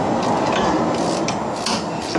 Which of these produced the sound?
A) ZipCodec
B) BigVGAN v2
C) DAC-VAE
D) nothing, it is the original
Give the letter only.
D